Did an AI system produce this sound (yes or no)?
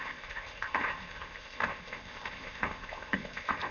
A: yes